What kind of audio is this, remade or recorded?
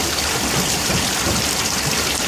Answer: recorded